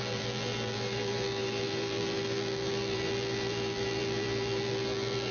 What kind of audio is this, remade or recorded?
remade